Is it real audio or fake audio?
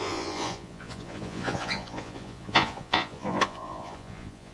fake